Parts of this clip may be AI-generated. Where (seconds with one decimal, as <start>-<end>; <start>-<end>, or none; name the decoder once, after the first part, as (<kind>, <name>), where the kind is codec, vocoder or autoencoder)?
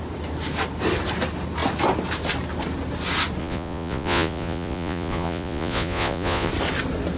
3.4-6.5 (vocoder, Vocos)